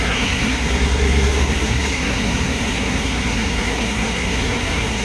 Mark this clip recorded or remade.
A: remade